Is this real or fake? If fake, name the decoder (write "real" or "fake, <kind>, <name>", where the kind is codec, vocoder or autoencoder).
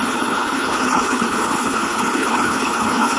fake, codec, HILCodec